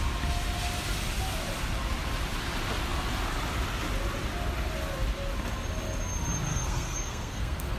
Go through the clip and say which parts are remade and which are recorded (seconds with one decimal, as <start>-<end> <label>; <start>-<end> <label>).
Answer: 0.0-6.5 recorded; 6.5-7.8 remade